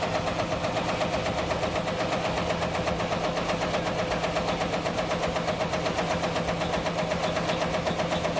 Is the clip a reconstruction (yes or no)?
no